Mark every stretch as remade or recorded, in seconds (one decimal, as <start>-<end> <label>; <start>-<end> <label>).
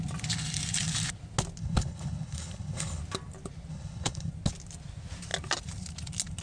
0.0-1.6 recorded; 1.6-3.0 remade; 3.0-3.7 recorded; 3.7-4.3 remade; 4.3-6.4 recorded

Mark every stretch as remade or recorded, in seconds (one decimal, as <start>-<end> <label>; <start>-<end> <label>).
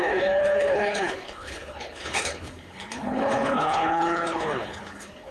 0.0-5.3 remade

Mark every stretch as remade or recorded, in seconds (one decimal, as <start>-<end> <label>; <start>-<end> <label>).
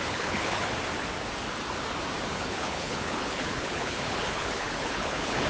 0.0-0.6 remade; 0.6-2.3 recorded; 2.3-5.5 remade